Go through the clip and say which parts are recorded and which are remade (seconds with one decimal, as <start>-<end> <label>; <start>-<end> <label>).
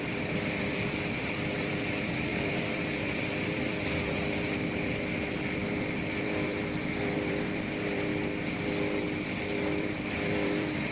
0.0-8.1 remade; 8.1-9.6 recorded; 9.6-10.9 remade